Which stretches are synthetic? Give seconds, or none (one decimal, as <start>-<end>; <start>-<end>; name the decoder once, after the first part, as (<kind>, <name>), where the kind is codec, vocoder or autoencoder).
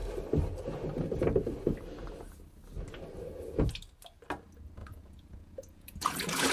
4.8-6.5 (vocoder, Vocos)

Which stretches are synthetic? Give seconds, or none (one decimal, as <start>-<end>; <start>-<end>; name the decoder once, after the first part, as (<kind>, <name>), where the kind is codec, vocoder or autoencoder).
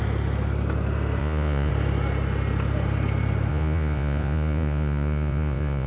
1.2-1.7 (vocoder, Vocos); 3.5-5.9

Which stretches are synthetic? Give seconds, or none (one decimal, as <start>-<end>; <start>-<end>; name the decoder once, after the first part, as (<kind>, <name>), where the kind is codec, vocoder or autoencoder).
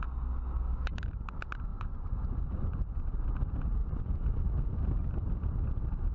1.7-3.2 (vocoder, Vocos); 3.8-4.5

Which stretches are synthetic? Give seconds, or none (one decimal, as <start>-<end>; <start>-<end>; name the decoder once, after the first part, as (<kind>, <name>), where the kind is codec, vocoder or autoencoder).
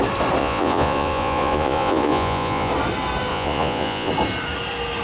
0.4-2.7 (vocoder, Vocos); 3.3-4.1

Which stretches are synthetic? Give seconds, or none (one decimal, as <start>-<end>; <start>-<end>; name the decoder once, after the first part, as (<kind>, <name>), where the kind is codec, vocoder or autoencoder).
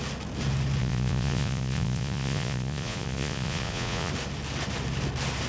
0.8-4.1 (vocoder, Vocos)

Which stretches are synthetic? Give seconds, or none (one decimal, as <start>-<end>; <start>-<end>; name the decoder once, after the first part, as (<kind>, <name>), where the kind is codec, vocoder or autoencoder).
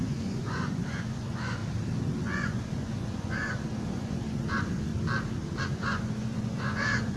0.0-1.6 (vocoder, Vocos); 2.2-4.9; 5.6-7.2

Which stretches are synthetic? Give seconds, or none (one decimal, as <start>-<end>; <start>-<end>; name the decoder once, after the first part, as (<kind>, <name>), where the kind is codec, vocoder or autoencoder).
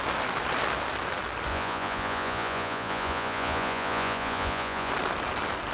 1.5-4.9 (vocoder, Vocos)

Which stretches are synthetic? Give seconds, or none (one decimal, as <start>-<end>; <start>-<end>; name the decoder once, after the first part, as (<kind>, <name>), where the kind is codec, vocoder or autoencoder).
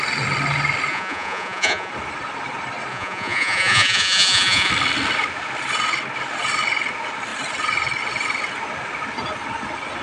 0.9-1.9 (vocoder, Vocos); 2.9-4.7